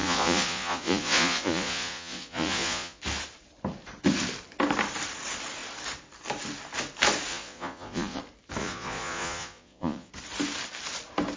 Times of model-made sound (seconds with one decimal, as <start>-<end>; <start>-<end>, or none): 0.0-3.0; 7.3-8.2; 8.6-10.1